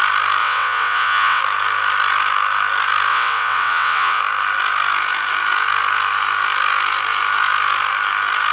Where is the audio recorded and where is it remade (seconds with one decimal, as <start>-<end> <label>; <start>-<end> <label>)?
0.0-0.4 recorded; 0.4-1.4 remade; 1.4-3.1 recorded; 3.1-4.2 remade; 4.2-8.5 recorded